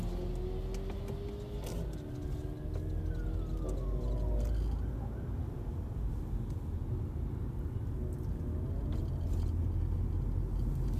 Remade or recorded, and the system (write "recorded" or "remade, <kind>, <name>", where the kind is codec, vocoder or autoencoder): recorded